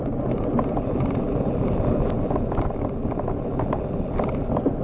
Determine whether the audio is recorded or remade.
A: recorded